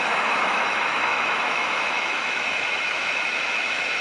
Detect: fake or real fake